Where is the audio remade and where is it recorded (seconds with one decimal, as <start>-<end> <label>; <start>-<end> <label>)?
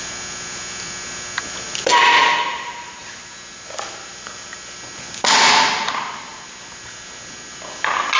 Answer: 0.0-8.2 recorded